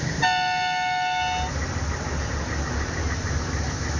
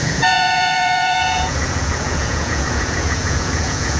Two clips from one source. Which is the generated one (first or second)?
second